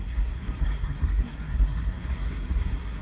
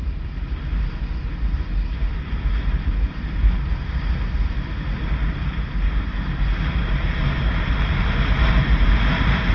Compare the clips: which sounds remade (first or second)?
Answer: first